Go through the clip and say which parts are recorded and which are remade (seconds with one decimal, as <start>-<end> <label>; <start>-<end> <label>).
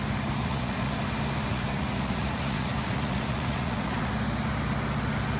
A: 0.0-0.4 recorded; 0.4-0.9 remade; 0.9-1.5 recorded; 1.5-4.1 remade; 4.1-5.4 recorded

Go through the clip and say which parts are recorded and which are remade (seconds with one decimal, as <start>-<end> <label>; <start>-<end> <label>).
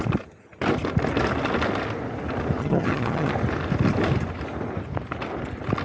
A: 0.0-2.6 recorded; 2.6-3.3 remade; 3.3-5.8 recorded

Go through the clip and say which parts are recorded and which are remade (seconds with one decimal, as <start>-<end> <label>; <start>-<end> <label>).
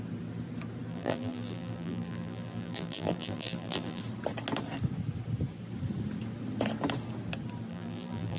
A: 0.0-0.9 recorded; 0.9-4.0 remade; 4.0-7.7 recorded; 7.7-8.4 remade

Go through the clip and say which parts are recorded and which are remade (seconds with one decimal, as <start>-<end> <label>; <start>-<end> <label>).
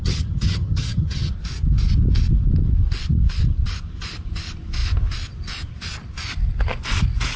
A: 0.0-1.3 remade; 1.3-7.4 recorded